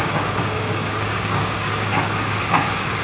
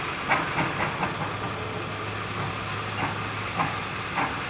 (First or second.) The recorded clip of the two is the second